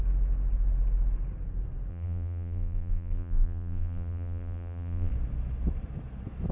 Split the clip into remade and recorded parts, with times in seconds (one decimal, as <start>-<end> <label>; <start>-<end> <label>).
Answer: 0.0-1.9 recorded; 1.9-5.1 remade; 5.1-6.5 recorded